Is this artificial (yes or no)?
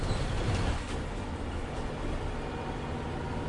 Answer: no